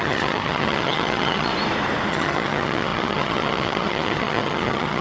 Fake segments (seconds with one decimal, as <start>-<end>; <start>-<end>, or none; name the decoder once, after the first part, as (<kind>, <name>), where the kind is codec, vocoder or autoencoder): 0.0-1.5 (vocoder, HiFi-GAN); 2.1-5.0